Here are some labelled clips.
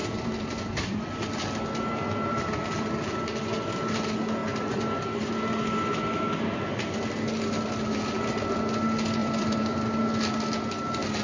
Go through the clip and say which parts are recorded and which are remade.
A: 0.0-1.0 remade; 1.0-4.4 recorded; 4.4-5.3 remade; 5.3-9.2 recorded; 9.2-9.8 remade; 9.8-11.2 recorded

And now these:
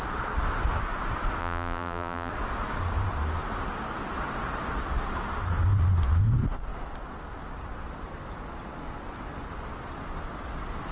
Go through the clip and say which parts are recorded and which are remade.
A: 0.0-1.4 recorded; 1.4-2.3 remade; 2.3-10.9 recorded

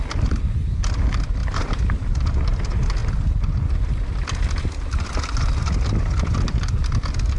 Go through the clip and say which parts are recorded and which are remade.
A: 0.0-1.4 recorded; 1.4-2.2 remade; 2.2-7.4 recorded

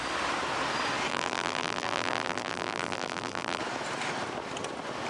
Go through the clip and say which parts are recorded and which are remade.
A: 0.0-1.1 recorded; 1.1-3.6 remade; 3.6-5.1 recorded

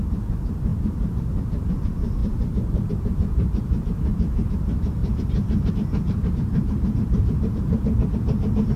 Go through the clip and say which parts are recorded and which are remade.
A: 0.0-8.8 remade